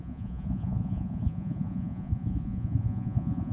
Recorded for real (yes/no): no